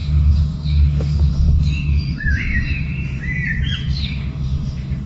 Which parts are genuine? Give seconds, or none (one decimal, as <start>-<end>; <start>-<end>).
3.2-3.8